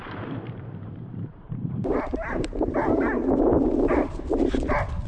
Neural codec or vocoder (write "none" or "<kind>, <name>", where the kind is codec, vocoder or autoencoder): vocoder, BigVGAN v2